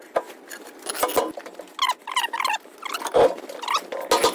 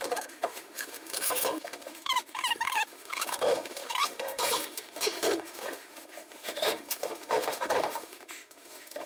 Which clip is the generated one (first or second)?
second